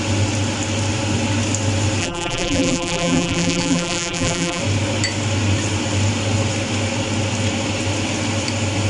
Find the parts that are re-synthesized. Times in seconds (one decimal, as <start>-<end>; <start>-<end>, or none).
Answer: 2.0-4.6